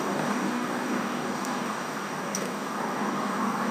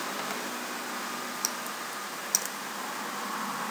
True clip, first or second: second